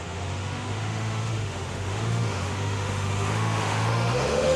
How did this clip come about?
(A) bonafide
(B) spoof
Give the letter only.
B